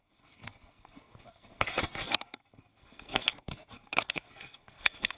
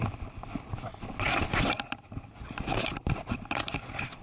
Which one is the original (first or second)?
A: second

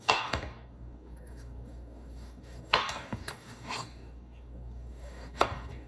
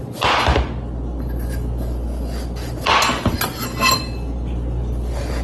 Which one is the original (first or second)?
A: second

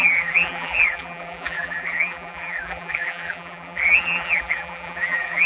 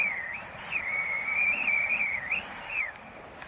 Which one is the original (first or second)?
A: second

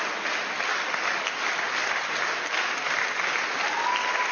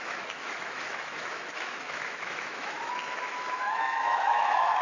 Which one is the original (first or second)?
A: first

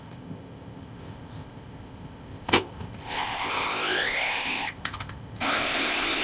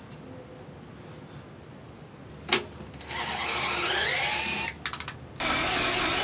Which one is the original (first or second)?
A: second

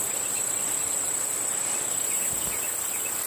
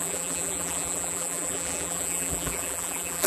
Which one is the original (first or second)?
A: first